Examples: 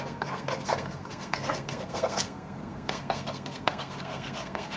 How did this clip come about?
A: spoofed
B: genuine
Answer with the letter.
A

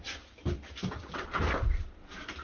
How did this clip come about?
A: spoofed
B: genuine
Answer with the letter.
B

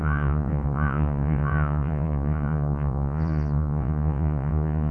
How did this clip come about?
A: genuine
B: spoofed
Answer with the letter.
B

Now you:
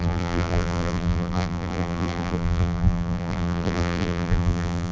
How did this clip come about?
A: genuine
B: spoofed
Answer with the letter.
B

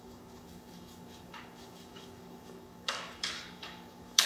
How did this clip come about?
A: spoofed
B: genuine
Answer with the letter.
A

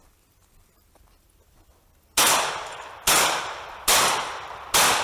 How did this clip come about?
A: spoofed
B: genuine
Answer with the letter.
B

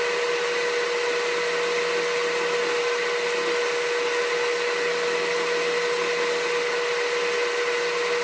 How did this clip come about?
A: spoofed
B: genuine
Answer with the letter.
B